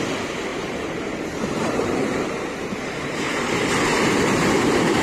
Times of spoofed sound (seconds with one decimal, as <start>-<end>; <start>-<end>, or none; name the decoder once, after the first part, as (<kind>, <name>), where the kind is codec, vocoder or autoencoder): 0.5-3.5 (vocoder, BigVGAN v2)